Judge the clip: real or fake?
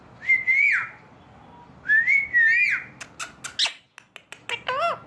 real